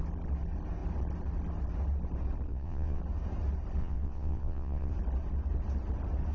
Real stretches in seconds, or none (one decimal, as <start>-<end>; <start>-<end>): 0.0-2.5; 3.0-3.8; 4.9-6.3